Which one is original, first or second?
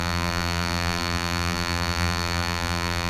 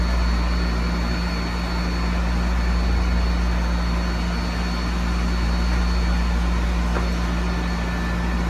second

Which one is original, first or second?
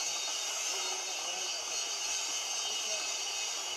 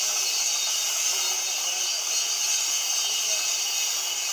first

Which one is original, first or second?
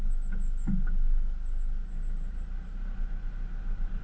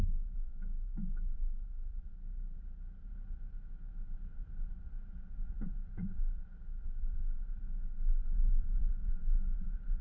first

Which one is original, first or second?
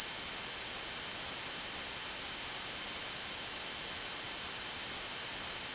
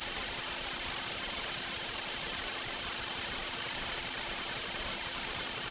first